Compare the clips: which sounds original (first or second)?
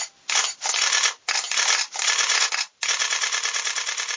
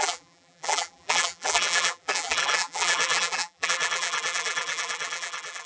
first